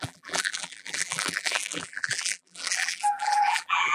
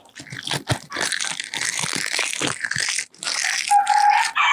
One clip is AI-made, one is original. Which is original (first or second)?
second